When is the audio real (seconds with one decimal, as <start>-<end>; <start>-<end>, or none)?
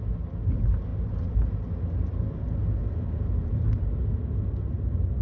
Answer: 0.0-5.2